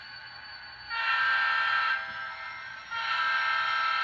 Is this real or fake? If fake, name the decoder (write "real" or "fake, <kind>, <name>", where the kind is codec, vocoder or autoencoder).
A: real